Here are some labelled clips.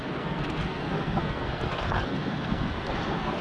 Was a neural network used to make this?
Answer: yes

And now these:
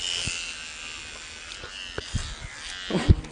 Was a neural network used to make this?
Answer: no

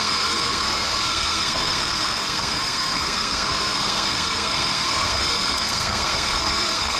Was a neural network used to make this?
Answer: yes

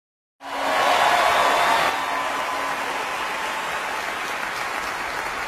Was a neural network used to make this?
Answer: no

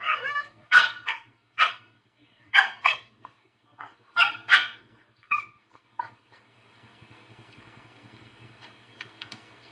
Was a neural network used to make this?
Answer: yes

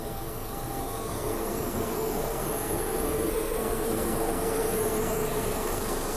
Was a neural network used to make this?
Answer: yes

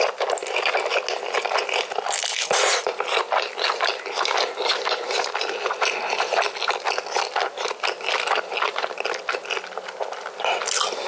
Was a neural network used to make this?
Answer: no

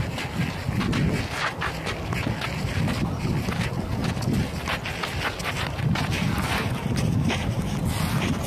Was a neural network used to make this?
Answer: no